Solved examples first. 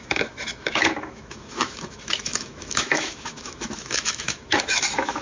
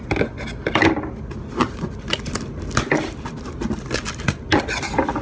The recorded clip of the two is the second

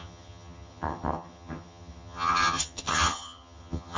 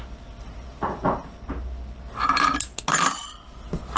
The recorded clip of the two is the second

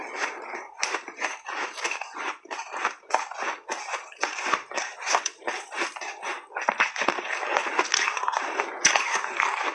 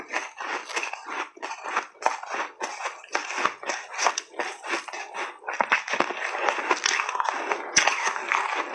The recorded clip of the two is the second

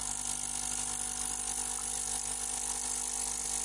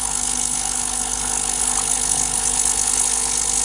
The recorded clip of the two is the first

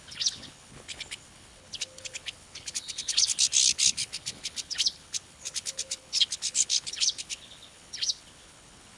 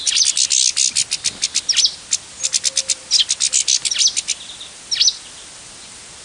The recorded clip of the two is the second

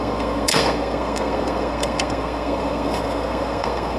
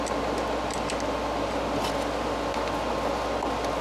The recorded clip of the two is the second